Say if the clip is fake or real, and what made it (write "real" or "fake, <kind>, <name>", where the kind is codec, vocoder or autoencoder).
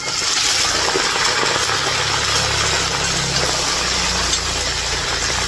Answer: real